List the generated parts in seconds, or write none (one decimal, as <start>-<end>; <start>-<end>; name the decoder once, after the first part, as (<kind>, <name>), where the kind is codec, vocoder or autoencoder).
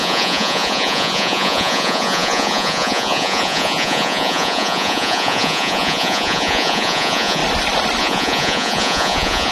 0.0-7.4 (vocoder, Vocos); 8.0-9.5